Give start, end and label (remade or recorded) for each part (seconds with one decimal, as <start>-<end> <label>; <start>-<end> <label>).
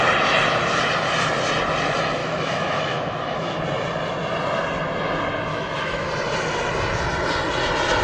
0.0-2.2 recorded; 2.2-3.6 remade; 3.6-5.5 recorded; 5.5-6.1 remade; 6.1-8.0 recorded